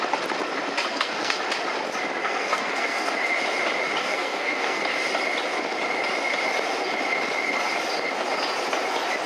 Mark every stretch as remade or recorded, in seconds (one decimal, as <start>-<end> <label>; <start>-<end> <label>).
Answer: 0.0-0.9 recorded; 0.9-1.4 remade; 1.4-2.2 recorded; 2.2-3.1 remade; 3.1-4.0 recorded; 4.0-4.8 remade; 4.8-9.3 recorded

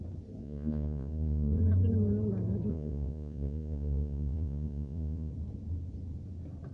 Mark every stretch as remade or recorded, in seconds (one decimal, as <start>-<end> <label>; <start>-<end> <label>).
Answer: 0.0-0.4 recorded; 0.4-1.6 remade; 1.6-2.7 recorded; 2.7-5.3 remade; 5.3-6.7 recorded

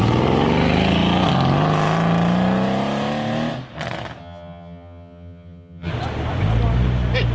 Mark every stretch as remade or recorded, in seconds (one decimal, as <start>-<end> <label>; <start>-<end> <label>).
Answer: 0.0-4.2 recorded; 4.2-5.9 remade; 5.9-7.3 recorded

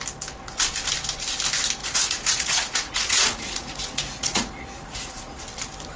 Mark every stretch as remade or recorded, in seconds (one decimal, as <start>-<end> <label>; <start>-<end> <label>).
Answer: 0.0-1.8 recorded; 1.8-5.4 remade; 5.4-6.0 recorded

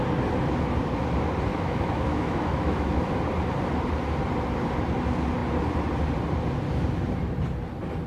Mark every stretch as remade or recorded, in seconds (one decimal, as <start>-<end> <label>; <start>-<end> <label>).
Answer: 0.0-1.5 recorded; 1.5-3.1 remade; 3.1-8.1 recorded

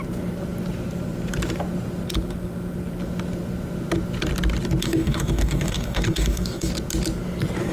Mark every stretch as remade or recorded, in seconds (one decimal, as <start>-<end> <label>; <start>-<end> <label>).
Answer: 0.0-4.8 recorded; 4.8-6.7 remade; 6.7-7.7 recorded